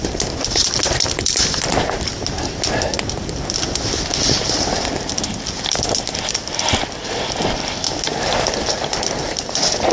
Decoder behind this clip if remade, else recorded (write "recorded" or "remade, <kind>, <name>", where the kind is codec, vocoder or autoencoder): recorded